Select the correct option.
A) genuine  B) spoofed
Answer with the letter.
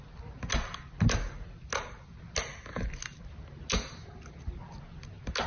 A